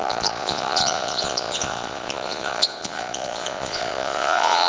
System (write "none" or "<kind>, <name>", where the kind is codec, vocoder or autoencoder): vocoder, Vocos